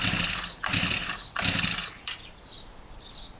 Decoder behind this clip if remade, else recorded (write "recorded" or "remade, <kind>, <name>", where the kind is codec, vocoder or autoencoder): recorded